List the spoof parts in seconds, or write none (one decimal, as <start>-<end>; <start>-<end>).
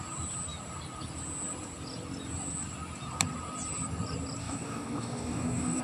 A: 4.4-5.8